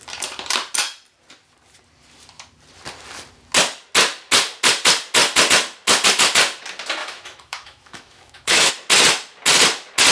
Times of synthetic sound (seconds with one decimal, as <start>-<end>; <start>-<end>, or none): 7.0-8.7